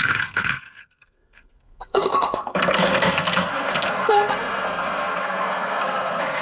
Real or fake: fake